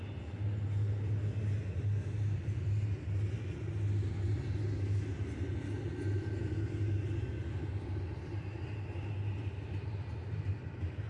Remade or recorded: recorded